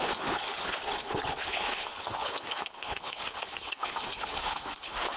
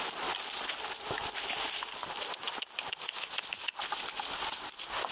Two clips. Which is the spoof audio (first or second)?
first